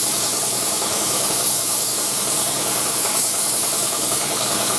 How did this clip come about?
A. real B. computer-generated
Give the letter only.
B